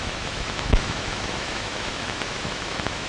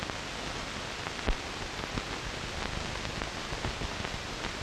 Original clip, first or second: second